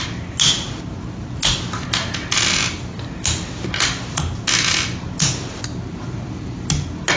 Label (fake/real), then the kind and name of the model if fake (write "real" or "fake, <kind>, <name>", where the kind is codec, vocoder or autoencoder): real